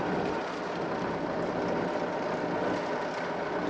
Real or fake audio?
real